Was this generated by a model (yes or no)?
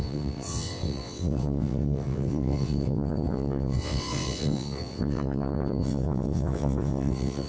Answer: yes